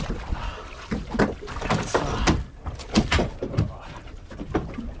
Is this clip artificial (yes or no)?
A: no